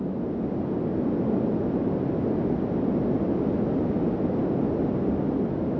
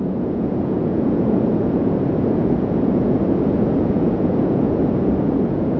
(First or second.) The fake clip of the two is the second